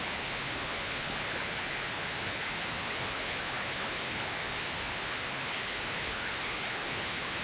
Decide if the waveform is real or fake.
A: fake